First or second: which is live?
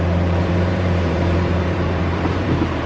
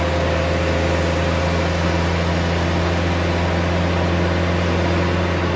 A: second